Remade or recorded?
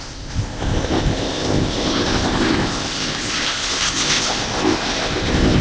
remade